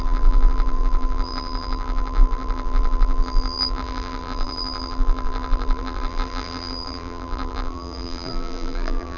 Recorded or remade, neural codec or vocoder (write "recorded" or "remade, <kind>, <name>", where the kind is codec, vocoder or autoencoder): remade, vocoder, BigVGAN v2